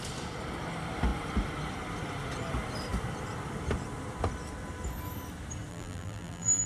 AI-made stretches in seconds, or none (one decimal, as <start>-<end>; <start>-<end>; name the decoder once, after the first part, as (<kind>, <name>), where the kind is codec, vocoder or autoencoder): 5.7-6.7 (vocoder, BigVGAN v2)